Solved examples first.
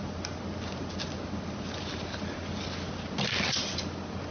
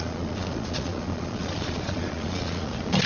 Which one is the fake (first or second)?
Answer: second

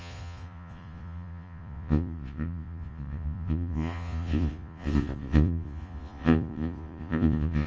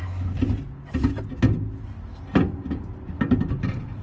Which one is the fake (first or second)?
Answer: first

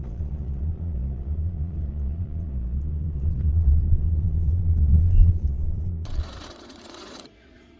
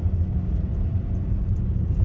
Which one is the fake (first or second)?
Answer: first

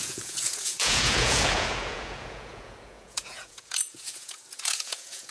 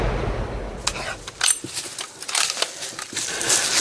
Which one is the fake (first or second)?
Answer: first